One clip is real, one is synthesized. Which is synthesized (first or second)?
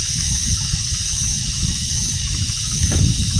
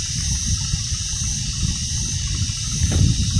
first